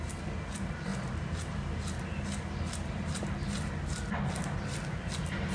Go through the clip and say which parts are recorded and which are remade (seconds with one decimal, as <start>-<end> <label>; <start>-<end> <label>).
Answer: 0.0-5.5 recorded